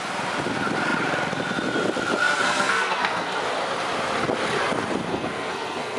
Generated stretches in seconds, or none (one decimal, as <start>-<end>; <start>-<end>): 2.2-3.4; 5.1-6.0